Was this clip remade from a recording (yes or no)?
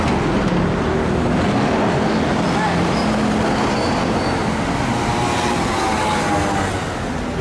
no